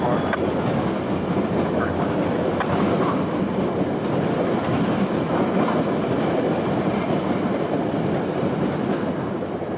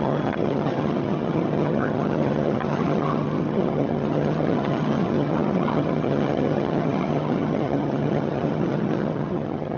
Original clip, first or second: first